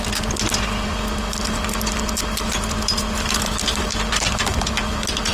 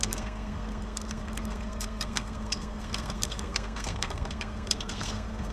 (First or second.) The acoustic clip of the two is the first